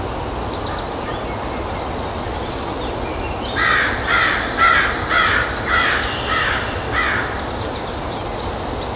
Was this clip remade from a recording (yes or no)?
no